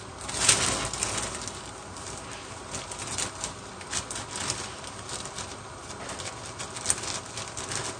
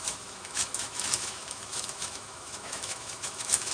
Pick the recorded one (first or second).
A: first